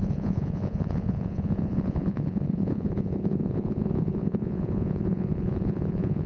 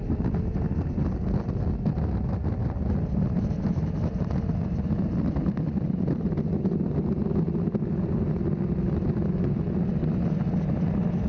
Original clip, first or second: second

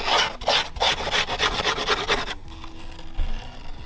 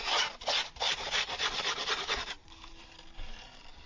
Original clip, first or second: first